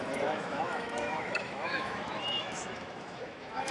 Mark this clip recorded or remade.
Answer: remade